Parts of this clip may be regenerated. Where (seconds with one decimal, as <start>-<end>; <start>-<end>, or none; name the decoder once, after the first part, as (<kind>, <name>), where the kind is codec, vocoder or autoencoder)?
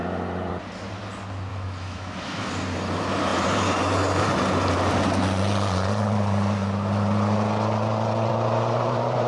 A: 1.5-2.5 (autoencoder, DAC-VAE)